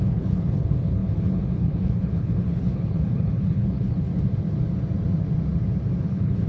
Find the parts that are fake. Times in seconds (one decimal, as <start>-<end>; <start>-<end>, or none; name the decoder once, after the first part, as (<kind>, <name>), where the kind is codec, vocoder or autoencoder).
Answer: 0.0-4.1 (codec, HILCodec); 6.0-6.5